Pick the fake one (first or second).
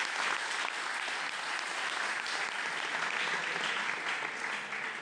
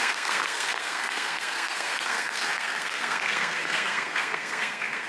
second